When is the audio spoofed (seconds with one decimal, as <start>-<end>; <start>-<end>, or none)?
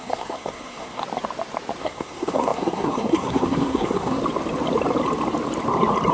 0.0-1.0; 1.8-4.2